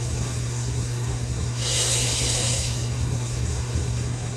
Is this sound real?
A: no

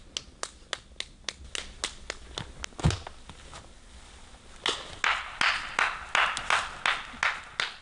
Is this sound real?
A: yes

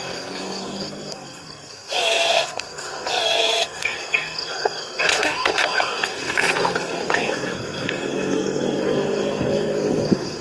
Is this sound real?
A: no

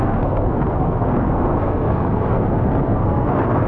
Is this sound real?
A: no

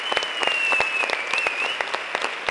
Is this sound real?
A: yes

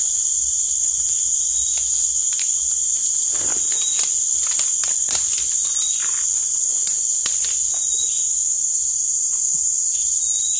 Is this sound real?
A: yes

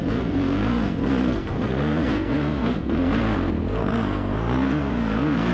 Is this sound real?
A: no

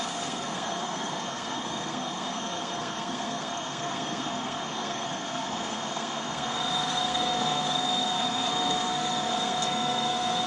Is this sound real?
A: no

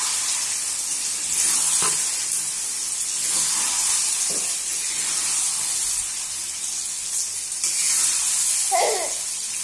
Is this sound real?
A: yes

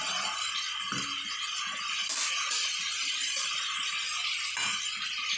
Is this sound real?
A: yes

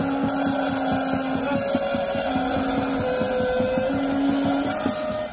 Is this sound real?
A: yes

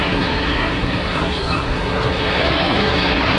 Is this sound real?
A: no